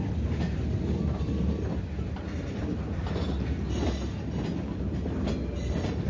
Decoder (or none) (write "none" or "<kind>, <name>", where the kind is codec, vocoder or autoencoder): none